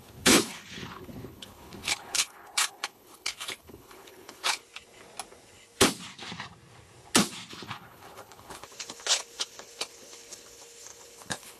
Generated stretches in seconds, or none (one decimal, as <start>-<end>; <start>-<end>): 0.0-4.6; 7.5-11.6